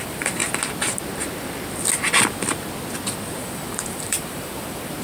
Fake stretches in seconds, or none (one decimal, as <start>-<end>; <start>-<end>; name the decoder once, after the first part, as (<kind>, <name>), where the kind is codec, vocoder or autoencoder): 0.0-0.4 (vocoder, BigVGAN v2); 3.4-5.0